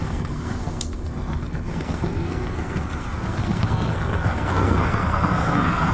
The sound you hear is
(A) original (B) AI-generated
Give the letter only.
B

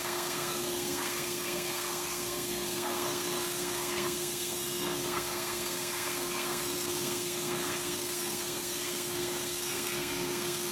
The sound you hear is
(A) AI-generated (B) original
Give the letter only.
A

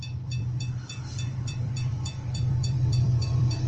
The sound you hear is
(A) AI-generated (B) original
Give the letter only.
A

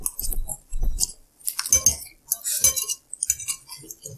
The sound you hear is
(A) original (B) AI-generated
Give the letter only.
A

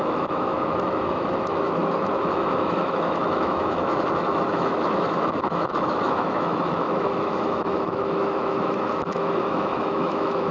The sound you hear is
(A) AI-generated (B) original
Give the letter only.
A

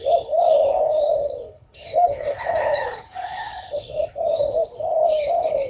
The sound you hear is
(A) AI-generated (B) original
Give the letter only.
A